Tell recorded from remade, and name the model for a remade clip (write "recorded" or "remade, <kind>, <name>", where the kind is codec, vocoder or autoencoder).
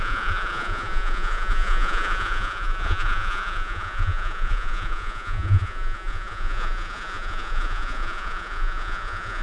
remade, vocoder, Vocos